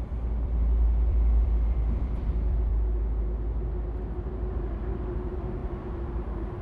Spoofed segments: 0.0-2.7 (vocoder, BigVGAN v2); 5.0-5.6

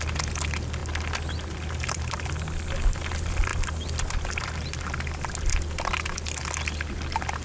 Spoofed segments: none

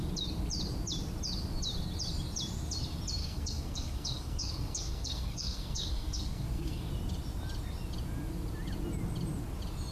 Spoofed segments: 3.2-6.9 (codec, SNAC)